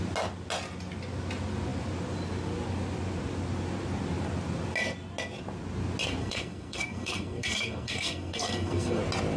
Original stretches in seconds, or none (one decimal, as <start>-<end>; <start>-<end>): 0.0-6.2; 9.0-9.4